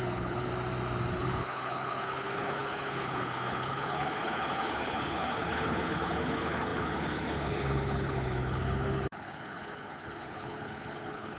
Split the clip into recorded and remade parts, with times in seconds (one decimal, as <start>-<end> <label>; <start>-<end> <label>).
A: 0.0-0.5 remade; 0.5-1.1 recorded; 1.1-11.4 remade